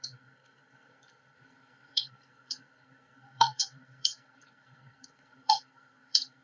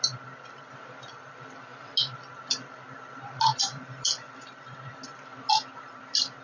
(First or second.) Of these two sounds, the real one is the second